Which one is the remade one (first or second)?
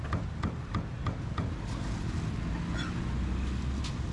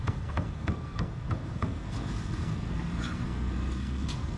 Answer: second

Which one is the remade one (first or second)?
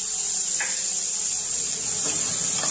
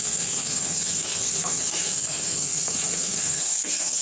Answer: second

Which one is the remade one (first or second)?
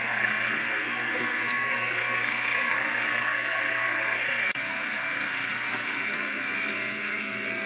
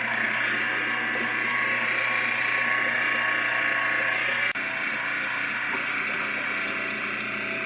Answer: first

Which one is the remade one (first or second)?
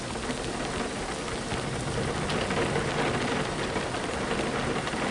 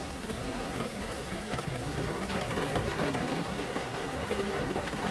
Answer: second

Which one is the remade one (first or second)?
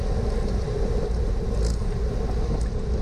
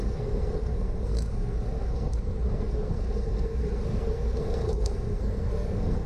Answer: second